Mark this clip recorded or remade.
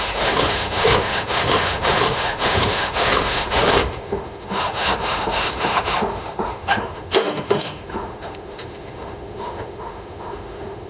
remade